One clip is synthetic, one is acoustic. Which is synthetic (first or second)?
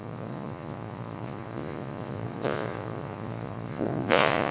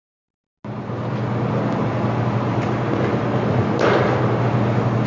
first